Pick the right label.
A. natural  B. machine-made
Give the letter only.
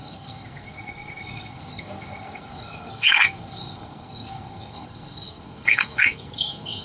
B